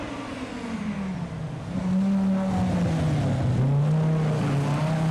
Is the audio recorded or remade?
recorded